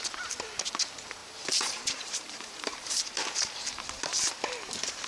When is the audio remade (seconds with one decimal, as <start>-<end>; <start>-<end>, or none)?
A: 1.2-4.3